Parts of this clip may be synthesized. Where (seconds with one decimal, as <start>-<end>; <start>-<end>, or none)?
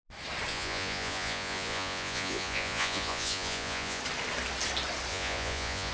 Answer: 0.5-4.0; 5.1-5.9